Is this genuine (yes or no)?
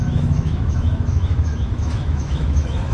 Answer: no